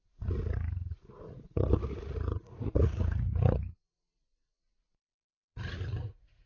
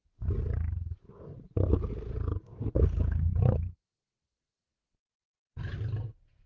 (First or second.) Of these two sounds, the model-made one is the first